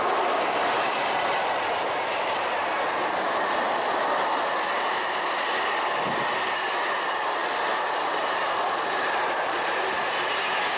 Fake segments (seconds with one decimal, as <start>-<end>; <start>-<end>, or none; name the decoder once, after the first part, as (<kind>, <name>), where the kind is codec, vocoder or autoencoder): none

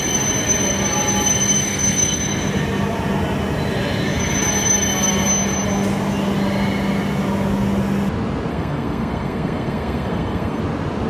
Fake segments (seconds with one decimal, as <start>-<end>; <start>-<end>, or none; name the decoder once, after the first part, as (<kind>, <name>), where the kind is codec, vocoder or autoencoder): 1.7-2.2 (codec, SNAC); 8.5-10.6

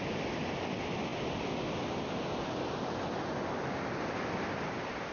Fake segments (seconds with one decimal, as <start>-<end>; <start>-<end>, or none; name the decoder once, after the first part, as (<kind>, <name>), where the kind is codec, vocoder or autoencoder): none

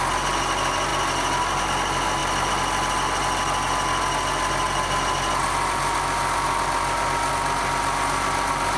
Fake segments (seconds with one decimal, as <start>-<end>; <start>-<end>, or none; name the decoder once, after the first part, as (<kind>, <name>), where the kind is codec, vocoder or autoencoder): none

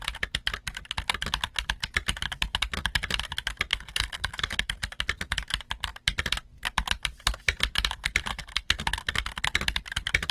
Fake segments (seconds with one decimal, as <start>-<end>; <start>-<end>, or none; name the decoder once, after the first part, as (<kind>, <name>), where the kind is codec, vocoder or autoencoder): 3.7-4.7 (codec, SNAC); 8.3-9.4

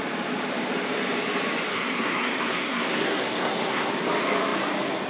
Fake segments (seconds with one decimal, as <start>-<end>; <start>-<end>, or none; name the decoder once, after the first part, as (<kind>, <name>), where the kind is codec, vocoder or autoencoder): 1.7-3.9 (codec, SNAC)

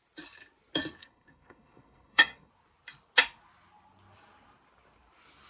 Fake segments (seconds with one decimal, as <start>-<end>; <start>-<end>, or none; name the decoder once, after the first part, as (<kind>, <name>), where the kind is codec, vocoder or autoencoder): 1.0-2.5 (codec, SNAC)

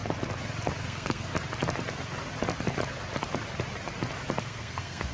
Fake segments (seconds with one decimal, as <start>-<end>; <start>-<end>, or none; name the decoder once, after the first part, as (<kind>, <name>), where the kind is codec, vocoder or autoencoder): 0.8-1.3 (codec, SNAC); 4.4-5.1